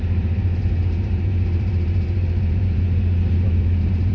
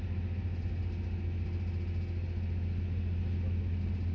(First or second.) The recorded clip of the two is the second